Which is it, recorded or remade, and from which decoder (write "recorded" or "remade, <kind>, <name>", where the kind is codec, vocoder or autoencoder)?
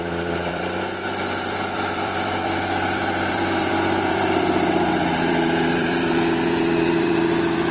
remade, vocoder, BigVGAN v2